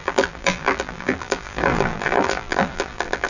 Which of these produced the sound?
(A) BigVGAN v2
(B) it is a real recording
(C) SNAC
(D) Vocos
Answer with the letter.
A